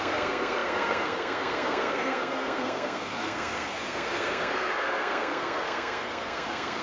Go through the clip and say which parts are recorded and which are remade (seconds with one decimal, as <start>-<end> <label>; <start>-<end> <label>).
0.0-6.8 remade